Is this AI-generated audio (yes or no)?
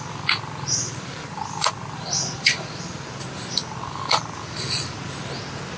yes